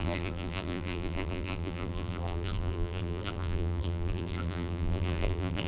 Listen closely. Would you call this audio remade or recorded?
remade